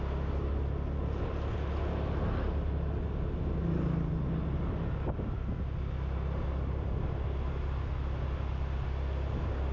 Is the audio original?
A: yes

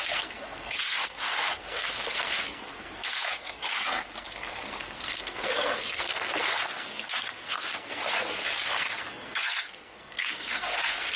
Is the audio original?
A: no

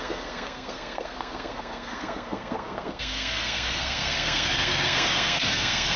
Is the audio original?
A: no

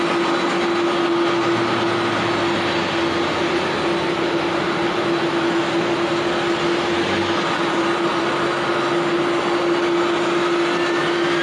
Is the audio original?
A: yes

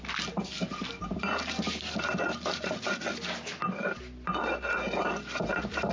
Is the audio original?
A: yes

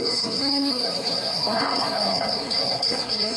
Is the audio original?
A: no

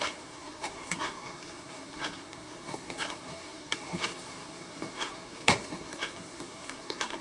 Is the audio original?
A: no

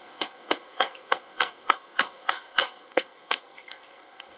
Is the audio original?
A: no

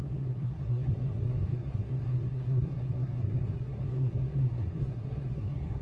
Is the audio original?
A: no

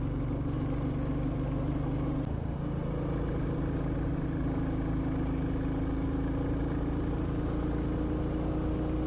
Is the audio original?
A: yes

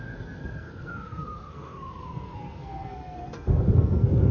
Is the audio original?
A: no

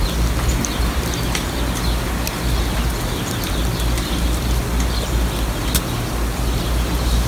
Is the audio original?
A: yes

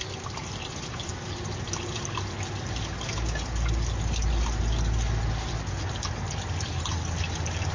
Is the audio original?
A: yes